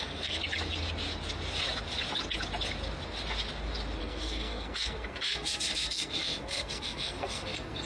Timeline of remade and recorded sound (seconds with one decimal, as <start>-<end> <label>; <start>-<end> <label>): 0.0-0.4 remade; 0.4-4.0 recorded; 4.0-7.9 remade